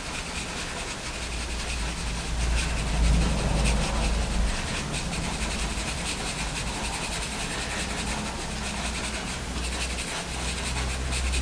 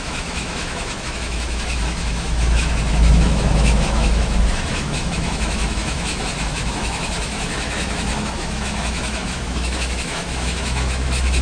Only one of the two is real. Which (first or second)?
first